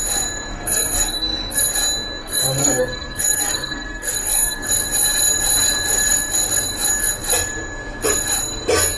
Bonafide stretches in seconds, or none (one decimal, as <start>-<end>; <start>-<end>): 0.0-0.5; 1.6-2.2; 4.7-9.0